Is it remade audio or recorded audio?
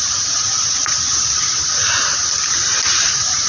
remade